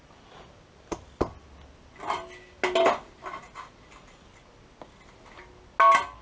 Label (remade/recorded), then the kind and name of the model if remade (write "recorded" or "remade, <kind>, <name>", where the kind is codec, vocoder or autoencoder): recorded